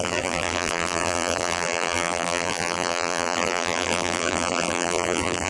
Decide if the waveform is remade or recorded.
remade